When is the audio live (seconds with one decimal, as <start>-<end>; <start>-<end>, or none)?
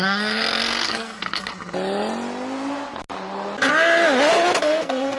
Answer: 1.5-4.6